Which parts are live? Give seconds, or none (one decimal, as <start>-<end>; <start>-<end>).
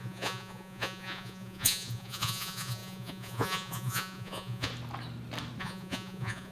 4.7-5.6